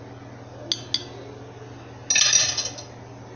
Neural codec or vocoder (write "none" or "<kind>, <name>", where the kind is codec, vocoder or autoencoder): none